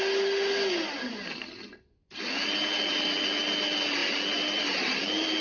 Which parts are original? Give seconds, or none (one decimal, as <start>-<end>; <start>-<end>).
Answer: 0.0-5.4